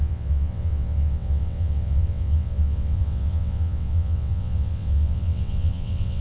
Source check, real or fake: fake